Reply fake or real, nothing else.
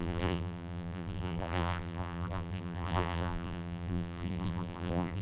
fake